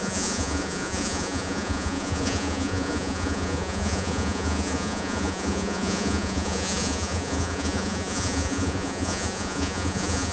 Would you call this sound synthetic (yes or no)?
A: yes